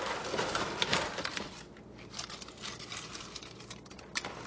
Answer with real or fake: real